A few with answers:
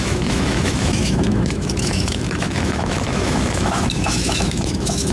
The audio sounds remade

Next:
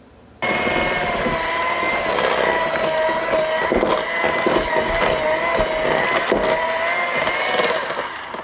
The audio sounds recorded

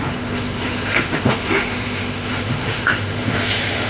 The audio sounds remade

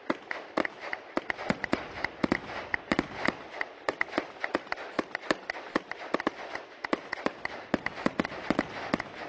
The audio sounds recorded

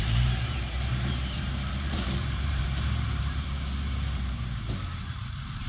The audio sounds remade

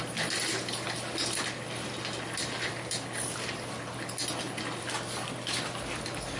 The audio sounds recorded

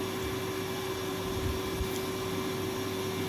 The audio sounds recorded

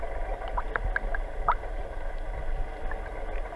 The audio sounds recorded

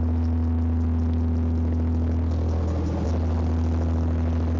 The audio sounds recorded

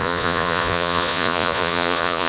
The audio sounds remade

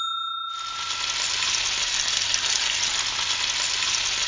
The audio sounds recorded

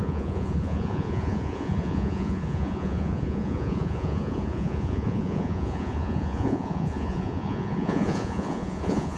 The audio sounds remade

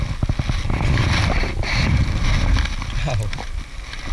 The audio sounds recorded